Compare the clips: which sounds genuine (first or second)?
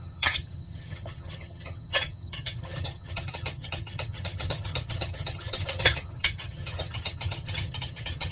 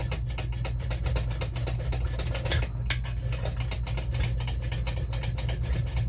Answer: second